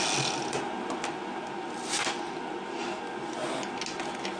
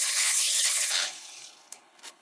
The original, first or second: first